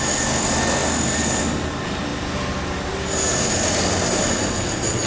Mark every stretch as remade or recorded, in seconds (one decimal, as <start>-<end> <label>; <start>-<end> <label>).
0.0-5.1 recorded